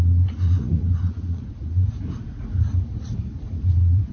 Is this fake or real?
fake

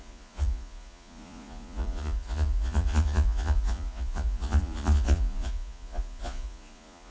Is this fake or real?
fake